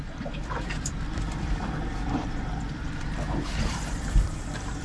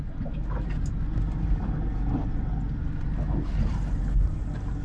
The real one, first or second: second